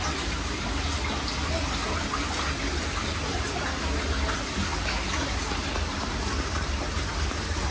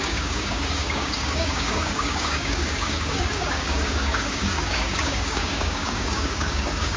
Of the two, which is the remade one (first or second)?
second